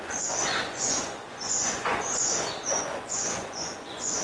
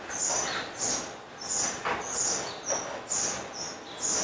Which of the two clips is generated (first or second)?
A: first